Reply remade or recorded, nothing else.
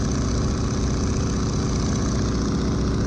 recorded